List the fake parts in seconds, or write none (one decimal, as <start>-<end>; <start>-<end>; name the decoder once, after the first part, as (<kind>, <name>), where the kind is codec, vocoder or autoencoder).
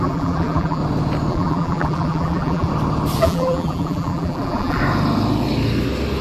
0.0-0.8 (vocoder, BigVGAN v2); 1.3-2.7; 3.2-4.8